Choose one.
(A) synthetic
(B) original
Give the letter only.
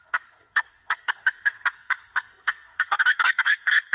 A